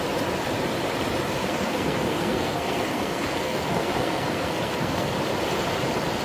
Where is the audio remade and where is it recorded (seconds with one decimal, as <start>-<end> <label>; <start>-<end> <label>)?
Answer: 0.0-1.4 recorded; 1.4-5.1 remade; 5.1-6.2 recorded